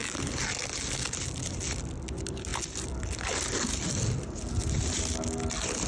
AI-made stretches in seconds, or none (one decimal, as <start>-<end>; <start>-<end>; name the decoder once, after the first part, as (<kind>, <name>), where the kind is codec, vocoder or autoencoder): none